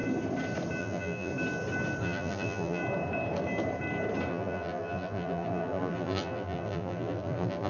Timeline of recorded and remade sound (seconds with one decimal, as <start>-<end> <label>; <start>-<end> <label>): 0.0-0.8 recorded; 0.8-1.3 remade; 1.3-2.0 recorded; 2.0-2.8 remade; 2.8-4.3 recorded; 4.3-7.7 remade